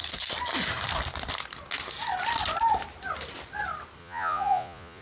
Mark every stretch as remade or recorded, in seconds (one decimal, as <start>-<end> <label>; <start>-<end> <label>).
0.0-4.0 recorded; 4.0-5.0 remade